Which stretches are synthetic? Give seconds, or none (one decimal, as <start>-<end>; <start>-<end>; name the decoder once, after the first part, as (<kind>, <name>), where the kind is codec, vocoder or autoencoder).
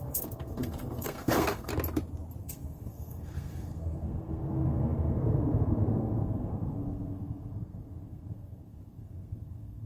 0.0-1.7 (codec, SNAC); 2.4-9.9